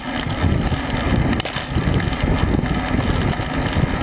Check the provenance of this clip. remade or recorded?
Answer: recorded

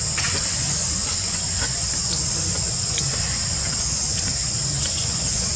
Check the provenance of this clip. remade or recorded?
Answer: remade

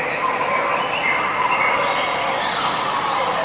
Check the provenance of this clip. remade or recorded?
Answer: recorded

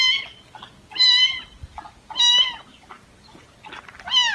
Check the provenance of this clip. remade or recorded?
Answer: recorded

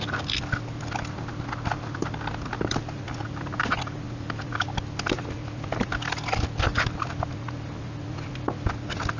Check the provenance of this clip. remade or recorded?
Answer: recorded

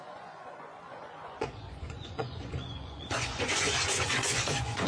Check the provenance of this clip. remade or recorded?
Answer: remade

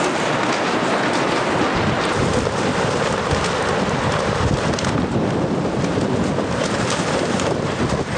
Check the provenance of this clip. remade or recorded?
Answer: recorded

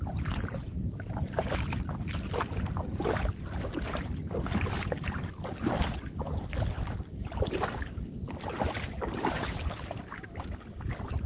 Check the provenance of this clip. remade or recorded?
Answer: recorded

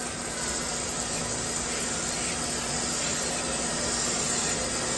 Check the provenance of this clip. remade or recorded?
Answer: recorded